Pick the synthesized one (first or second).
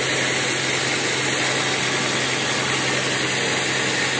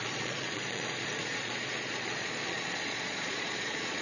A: second